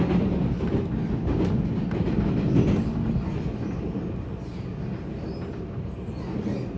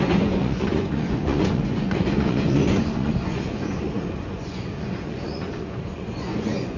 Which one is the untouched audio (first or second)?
first